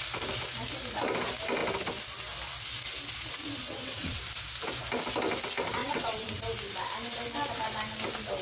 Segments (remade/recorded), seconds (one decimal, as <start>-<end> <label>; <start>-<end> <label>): 0.0-3.4 recorded; 3.4-4.2 remade; 4.2-5.8 recorded; 5.8-6.4 remade; 6.4-8.4 recorded